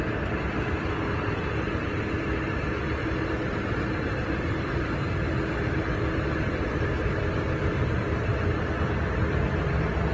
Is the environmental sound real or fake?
real